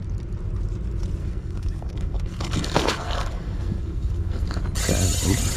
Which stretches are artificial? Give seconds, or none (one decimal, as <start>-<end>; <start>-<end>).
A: 1.2-4.6